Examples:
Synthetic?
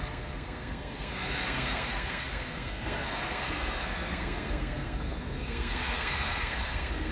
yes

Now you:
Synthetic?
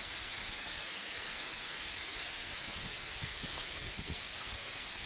yes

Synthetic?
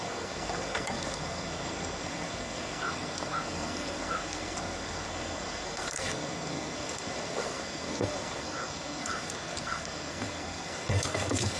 yes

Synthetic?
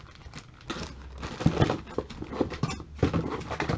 no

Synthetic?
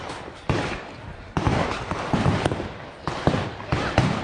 yes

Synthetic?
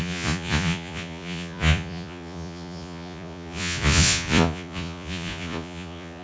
yes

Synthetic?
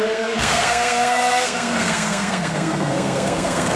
yes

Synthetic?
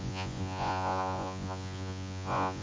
yes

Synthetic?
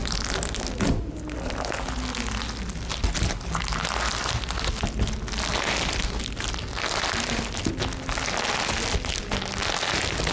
no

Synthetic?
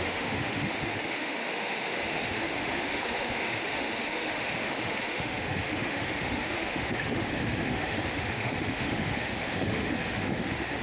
yes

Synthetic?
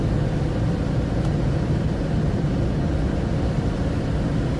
no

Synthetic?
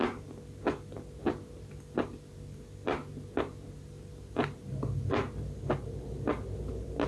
no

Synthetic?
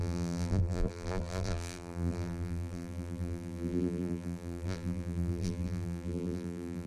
yes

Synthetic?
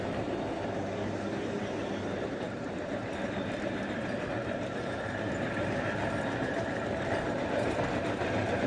yes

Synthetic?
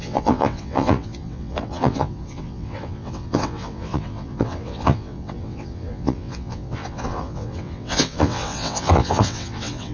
yes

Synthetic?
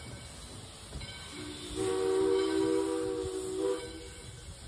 no